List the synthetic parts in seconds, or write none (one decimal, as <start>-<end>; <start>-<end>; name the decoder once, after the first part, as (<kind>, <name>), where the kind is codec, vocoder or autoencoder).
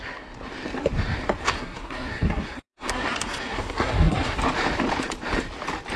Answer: 1.4-4.4 (codec, SNAC)